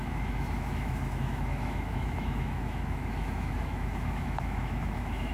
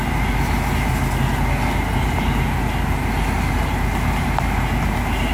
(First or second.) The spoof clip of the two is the first